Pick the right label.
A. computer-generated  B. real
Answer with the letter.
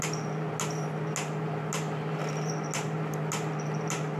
B